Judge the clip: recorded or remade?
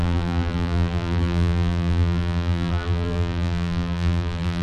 remade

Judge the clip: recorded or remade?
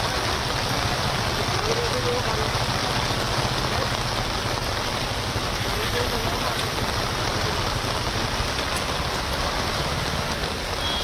recorded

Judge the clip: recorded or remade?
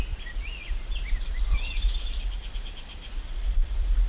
remade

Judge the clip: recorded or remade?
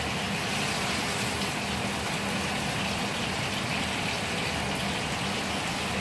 recorded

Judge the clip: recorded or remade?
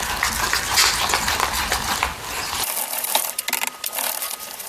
recorded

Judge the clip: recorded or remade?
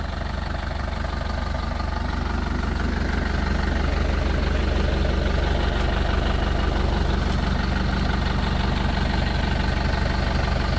recorded